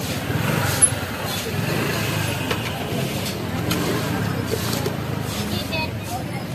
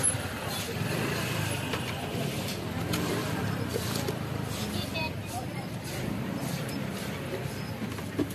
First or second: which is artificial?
second